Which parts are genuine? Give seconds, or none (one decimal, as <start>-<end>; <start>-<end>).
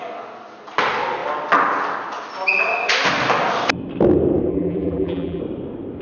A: 0.0-4.5; 5.4-6.0